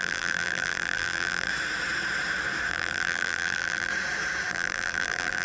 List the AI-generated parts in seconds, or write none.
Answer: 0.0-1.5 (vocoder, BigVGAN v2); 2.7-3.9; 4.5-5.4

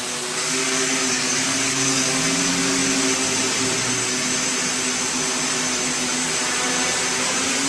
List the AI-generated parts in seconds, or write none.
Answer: 0.6-2.2 (codec, DAC)

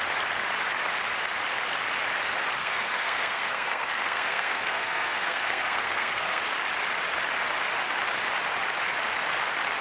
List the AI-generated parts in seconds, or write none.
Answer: 2.6-6.4 (codec, SNAC)

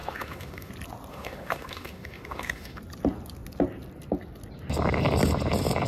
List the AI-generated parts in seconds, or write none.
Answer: 0.0-0.7 (autoencoder, DAC-VAE); 1.1-2.8

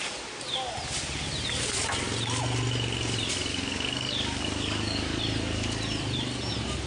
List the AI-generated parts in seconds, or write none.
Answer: 3.5-5.2 (codec, DAC)

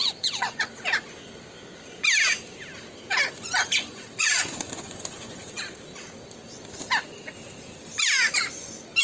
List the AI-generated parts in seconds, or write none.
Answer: 0.0-0.7 (vocoder, Vocos); 3.6-5.6